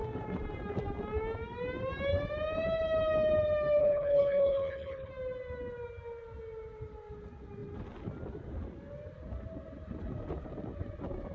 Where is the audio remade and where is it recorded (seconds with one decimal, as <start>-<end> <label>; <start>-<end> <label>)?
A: 0.0-3.8 recorded; 3.8-5.1 remade; 5.1-11.3 recorded